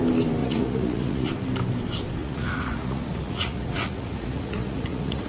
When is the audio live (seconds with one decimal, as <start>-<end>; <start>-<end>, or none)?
0.0-0.4; 1.3-2.2